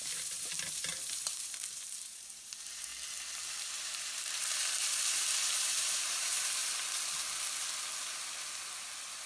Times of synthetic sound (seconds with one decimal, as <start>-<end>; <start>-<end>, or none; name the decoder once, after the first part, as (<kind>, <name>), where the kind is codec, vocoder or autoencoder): 0.0-2.9 (vocoder, BigVGAN v2); 3.7-6.6